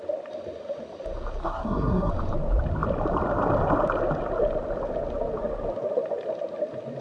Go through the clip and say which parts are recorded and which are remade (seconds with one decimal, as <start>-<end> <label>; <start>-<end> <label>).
0.0-1.4 recorded; 1.4-2.1 remade; 2.1-7.0 recorded

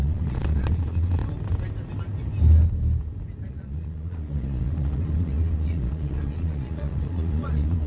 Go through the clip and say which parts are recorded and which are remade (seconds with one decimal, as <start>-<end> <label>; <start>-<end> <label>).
0.0-1.2 remade; 1.2-3.5 recorded; 3.5-7.9 remade

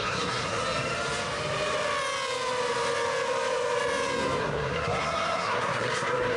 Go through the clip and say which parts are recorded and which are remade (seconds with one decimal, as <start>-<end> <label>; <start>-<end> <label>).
0.0-0.6 remade; 0.6-4.4 recorded; 4.4-6.4 remade

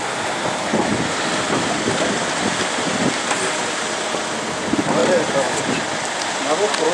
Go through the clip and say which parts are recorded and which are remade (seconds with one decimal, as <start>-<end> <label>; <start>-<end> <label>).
0.0-6.9 recorded

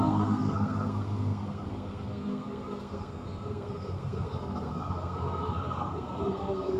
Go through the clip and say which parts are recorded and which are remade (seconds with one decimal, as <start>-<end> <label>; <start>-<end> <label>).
0.0-6.8 remade

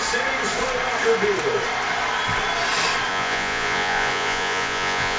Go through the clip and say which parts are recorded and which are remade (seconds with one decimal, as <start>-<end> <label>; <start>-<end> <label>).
0.0-3.1 recorded; 3.1-5.2 remade

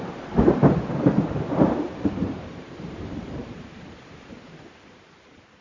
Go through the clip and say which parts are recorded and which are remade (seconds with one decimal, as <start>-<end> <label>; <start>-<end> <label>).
0.0-5.6 remade

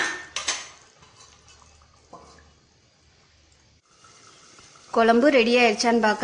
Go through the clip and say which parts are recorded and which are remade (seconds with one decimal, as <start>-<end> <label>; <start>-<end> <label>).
0.0-6.2 recorded